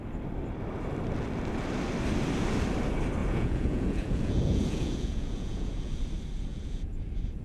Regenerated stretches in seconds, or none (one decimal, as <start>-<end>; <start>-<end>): 3.2-5.9; 6.5-7.4